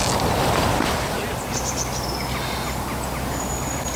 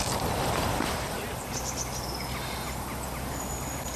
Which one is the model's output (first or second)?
second